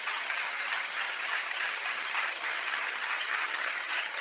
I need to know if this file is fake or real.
fake